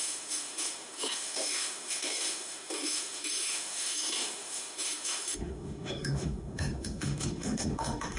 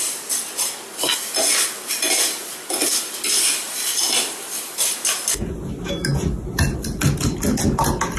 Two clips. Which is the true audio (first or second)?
second